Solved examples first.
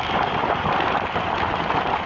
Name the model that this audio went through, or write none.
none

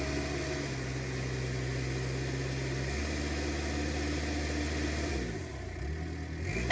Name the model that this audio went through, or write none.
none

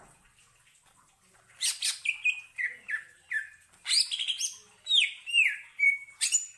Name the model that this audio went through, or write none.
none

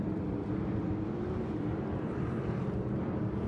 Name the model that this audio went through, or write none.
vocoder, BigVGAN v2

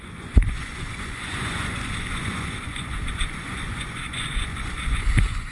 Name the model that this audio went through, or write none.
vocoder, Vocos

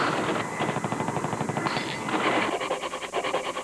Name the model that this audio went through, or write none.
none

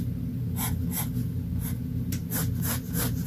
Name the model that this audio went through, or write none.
none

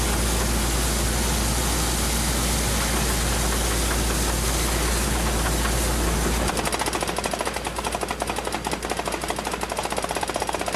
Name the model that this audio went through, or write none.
none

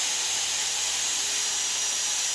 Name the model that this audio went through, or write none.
none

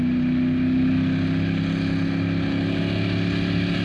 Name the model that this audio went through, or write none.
none